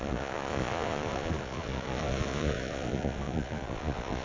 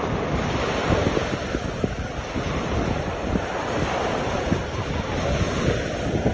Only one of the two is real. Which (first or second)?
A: second